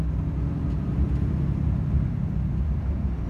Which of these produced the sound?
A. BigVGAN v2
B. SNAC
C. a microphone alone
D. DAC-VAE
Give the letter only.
C